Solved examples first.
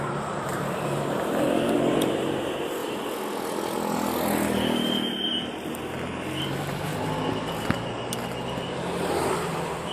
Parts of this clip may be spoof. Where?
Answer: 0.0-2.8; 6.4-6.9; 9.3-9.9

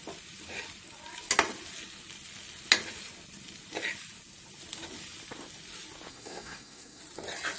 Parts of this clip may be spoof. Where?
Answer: 6.1-7.0

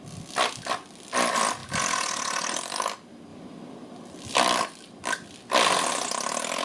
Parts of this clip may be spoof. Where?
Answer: none

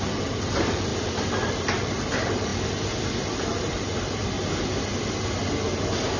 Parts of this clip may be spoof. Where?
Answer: 0.0-0.9; 1.5-2.5

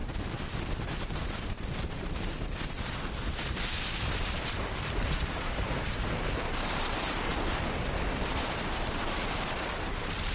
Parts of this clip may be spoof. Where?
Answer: 0.0-7.3; 8.6-10.3

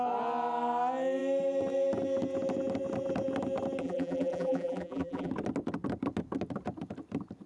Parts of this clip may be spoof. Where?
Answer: 3.8-5.3

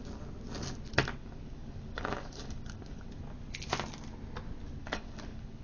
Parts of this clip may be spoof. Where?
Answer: 1.2-3.2; 4.8-5.6